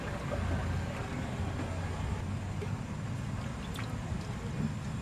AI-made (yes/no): no